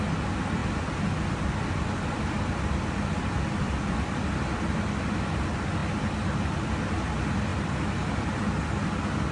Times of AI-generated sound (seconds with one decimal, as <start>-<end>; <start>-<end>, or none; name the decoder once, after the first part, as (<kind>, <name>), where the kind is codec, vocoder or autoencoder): none